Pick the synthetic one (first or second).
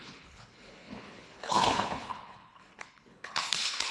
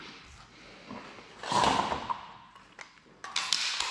first